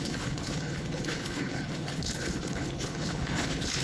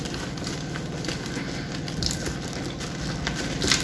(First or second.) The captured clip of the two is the second